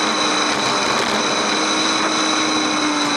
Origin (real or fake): real